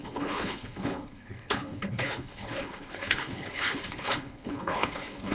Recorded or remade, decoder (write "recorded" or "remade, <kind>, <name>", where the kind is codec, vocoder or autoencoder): remade, codec, HILCodec